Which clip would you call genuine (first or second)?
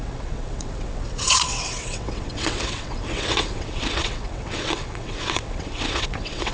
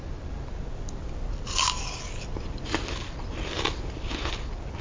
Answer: second